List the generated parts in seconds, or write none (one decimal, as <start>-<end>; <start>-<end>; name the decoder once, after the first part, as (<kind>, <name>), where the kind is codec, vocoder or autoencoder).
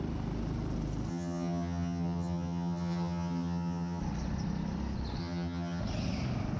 1.1-4.0 (vocoder, HiFi-GAN); 5.2-5.8